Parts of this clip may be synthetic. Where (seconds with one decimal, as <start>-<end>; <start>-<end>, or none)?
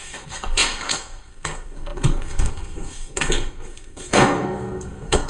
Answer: 0.0-5.3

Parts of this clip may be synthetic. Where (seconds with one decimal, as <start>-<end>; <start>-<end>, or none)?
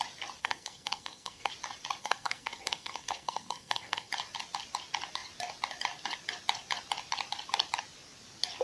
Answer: 0.4-1.5; 2.0-4.1